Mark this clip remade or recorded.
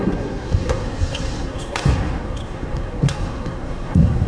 remade